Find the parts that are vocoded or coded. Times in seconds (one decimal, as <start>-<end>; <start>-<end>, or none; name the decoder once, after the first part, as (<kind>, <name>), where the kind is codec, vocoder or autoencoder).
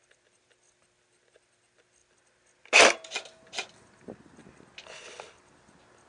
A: none